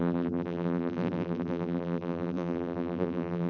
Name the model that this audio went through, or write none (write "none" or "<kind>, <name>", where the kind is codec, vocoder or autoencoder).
vocoder, BigVGAN v2